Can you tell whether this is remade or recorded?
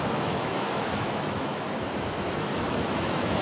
remade